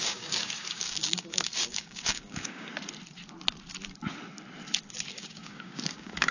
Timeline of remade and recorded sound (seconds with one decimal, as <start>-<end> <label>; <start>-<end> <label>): 0.0-2.7 remade; 2.7-5.1 recorded; 5.1-6.3 remade